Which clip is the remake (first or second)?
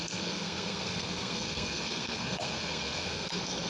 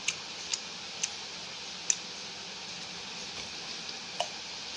first